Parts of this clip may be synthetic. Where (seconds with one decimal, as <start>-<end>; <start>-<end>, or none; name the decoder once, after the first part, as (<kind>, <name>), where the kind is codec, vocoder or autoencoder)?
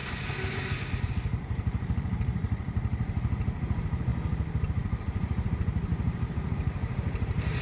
0.0-4.1 (vocoder, BigVGAN v2); 4.7-7.6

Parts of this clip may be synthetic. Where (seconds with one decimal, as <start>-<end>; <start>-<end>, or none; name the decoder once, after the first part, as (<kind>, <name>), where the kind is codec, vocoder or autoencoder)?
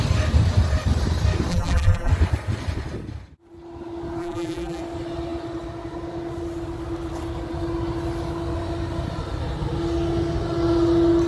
1.5-2.1 (vocoder, BigVGAN v2); 4.2-4.8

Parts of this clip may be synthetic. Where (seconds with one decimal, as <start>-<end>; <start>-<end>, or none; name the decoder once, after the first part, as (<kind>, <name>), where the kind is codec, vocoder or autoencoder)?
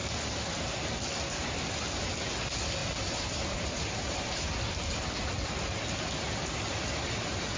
2.8-4.5 (vocoder, BigVGAN v2)